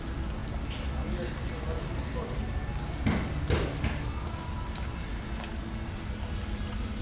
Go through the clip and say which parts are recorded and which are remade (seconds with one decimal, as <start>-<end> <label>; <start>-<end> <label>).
0.0-7.0 recorded